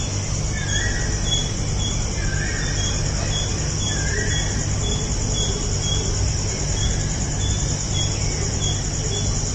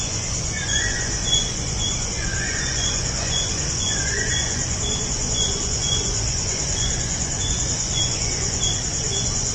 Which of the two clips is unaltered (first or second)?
first